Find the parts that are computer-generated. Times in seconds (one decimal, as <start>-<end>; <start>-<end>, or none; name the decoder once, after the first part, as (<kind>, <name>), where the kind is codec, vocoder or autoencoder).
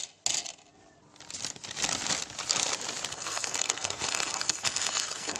3.1-5.4 (codec, SNAC)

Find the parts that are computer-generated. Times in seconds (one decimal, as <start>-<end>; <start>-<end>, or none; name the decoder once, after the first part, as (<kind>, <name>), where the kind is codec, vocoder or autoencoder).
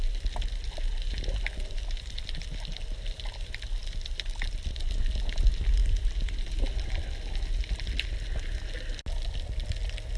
none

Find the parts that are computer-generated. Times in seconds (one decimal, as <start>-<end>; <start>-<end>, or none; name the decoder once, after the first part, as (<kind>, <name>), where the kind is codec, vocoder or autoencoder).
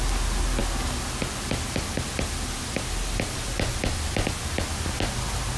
none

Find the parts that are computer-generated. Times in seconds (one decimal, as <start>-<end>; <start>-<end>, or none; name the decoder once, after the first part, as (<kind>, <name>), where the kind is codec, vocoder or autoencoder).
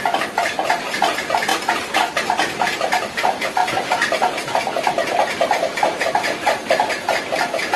3.6-6.9 (vocoder, BigVGAN v2)